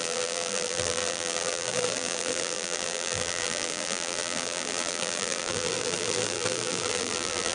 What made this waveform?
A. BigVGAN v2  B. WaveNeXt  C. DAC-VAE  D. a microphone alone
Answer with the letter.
A